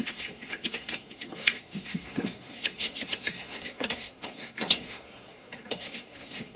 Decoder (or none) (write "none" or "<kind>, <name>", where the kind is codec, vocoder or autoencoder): codec, SNAC